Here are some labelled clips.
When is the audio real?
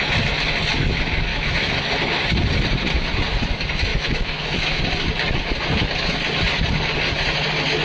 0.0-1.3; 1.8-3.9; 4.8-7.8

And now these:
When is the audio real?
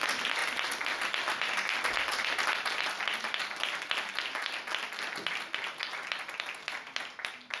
0.0-7.6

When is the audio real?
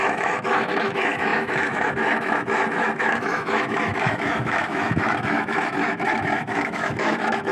none